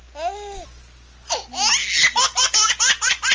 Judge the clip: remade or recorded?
recorded